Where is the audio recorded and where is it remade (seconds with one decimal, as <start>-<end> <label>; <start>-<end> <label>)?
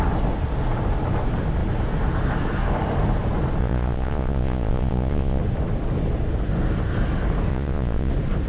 0.0-3.6 recorded; 3.6-5.4 remade; 5.4-7.5 recorded; 7.5-8.1 remade; 8.1-8.5 recorded